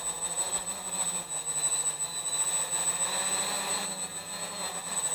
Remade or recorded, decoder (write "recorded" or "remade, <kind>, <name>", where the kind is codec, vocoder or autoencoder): recorded